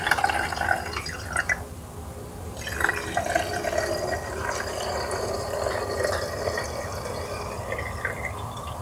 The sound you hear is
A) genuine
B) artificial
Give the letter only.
A